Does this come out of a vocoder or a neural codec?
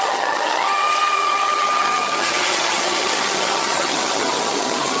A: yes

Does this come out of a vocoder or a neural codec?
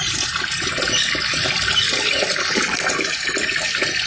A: no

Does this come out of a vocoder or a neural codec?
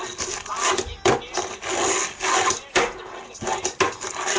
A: no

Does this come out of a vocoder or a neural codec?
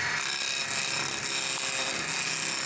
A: no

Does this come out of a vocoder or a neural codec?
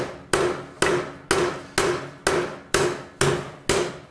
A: no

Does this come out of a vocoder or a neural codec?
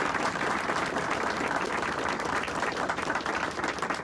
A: no